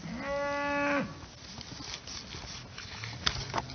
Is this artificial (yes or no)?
no